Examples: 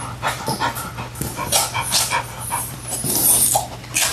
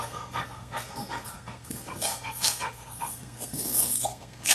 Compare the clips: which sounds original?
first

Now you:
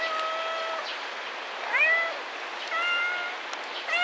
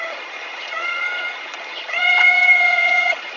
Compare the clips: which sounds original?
first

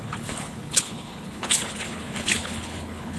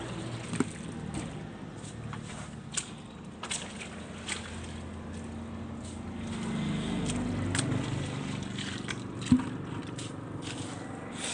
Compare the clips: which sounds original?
second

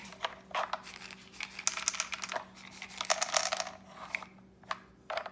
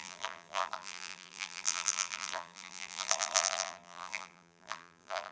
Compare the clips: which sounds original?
first